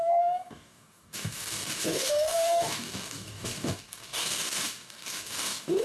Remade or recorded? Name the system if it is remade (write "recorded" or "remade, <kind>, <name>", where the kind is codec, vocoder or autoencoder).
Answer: remade, codec, DAC